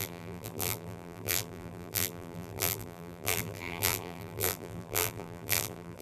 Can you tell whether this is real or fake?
fake